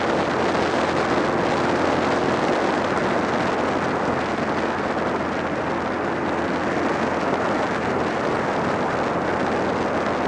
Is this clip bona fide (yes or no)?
yes